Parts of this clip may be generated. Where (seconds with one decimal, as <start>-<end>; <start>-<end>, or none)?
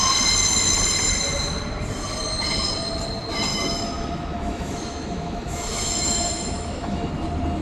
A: 3.5-7.1